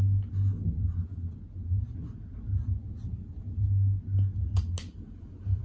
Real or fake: real